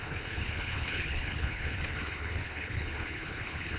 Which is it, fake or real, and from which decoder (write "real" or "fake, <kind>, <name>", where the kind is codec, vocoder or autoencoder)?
fake, codec, HILCodec